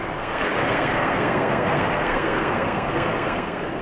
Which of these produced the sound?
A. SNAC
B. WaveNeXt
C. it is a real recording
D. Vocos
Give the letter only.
A